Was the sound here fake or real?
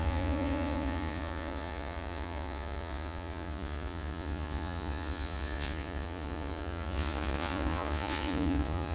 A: fake